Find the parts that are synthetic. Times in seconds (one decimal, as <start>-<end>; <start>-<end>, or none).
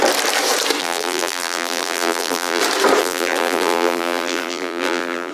0.8-2.6; 3.0-5.3